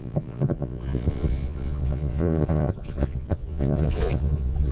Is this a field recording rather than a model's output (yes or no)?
no